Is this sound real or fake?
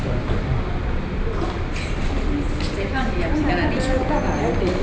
real